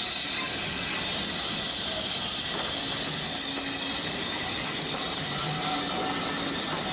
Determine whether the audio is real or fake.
real